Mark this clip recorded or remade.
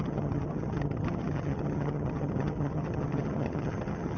remade